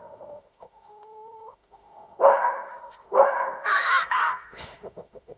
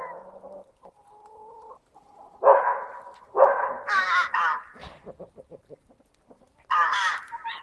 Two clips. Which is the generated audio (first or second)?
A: first